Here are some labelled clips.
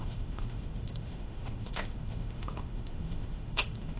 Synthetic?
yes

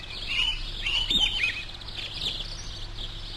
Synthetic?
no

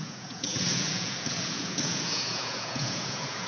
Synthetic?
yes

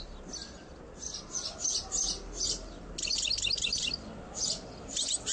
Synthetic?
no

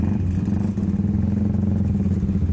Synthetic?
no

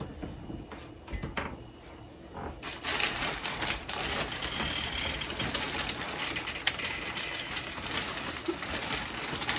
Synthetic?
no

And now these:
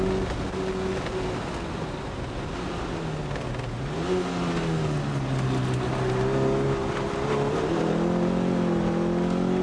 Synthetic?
no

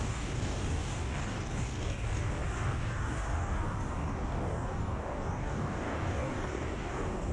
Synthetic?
yes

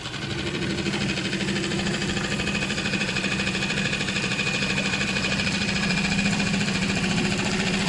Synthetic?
yes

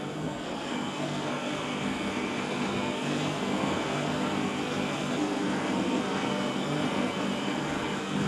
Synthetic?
yes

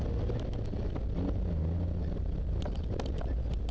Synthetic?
no